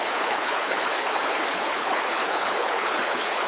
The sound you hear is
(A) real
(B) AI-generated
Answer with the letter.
B